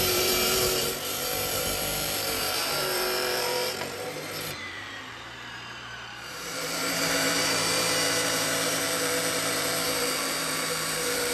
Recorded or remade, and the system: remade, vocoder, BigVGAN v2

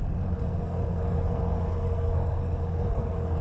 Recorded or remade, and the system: remade, codec, SNAC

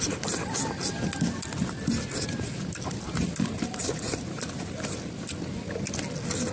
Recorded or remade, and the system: recorded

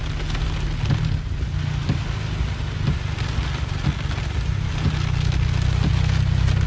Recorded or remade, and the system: recorded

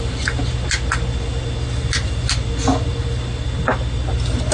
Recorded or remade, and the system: recorded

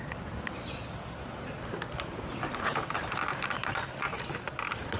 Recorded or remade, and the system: recorded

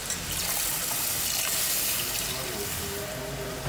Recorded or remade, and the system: recorded